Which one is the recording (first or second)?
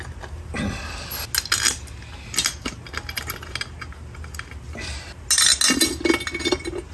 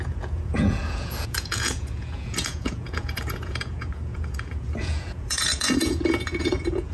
first